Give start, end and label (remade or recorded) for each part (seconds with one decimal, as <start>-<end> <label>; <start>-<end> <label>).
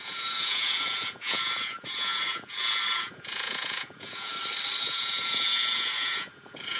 0.0-4.3 remade; 4.3-4.8 recorded; 4.8-6.8 remade